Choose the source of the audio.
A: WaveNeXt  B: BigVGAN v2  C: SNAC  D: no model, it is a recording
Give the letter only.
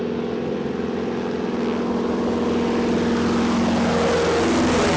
D